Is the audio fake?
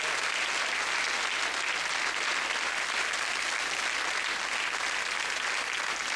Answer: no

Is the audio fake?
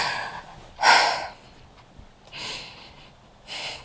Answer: no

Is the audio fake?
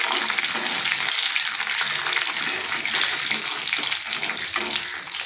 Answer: no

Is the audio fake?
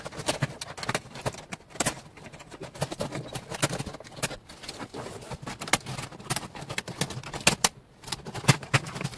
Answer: no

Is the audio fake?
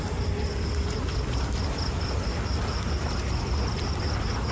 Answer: no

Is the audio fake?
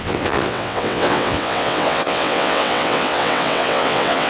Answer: yes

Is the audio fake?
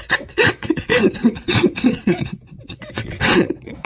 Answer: yes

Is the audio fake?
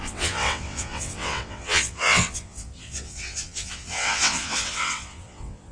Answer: yes